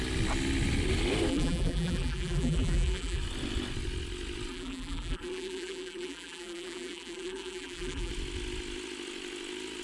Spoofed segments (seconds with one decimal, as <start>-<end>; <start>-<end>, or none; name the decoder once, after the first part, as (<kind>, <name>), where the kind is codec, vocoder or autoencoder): 1.3-3.2 (vocoder, BigVGAN v2); 4.5-8.1